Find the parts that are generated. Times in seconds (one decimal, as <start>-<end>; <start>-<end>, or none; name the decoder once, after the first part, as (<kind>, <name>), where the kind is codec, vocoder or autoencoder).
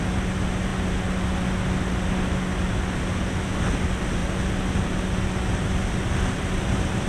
none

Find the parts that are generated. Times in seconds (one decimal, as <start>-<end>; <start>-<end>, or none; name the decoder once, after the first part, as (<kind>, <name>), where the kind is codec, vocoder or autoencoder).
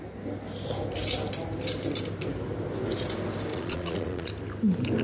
3.5-4.3 (vocoder, Vocos)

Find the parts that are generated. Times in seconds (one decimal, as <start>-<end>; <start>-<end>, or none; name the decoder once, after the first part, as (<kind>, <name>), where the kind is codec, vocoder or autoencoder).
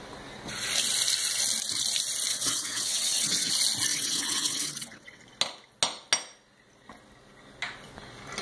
2.3-3.5 (vocoder, WaveNeXt); 3.9-5.2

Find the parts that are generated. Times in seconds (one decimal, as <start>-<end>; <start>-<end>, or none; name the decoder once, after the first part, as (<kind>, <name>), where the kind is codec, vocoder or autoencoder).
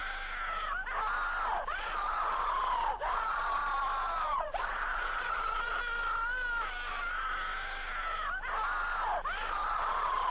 1.5-3.6 (vocoder, Vocos); 4.2-5.8; 9.5-10.3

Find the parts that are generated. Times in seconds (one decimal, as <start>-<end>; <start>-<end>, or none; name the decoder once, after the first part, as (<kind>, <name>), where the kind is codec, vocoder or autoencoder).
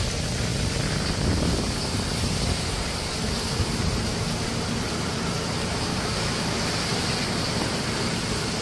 5.9-6.6 (codec, DAC)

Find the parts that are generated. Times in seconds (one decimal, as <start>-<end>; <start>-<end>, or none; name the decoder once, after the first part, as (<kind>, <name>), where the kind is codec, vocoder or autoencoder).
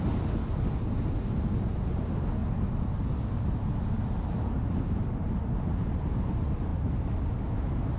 6.7-7.3 (vocoder, BigVGAN v2)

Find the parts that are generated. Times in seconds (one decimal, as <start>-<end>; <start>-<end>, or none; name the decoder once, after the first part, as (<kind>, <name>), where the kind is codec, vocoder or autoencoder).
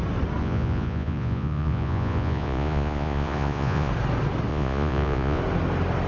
0.4-3.9 (vocoder, Vocos); 4.5-5.4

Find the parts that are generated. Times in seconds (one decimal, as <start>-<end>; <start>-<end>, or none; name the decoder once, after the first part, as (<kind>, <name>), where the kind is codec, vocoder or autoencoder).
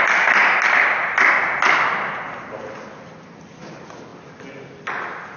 none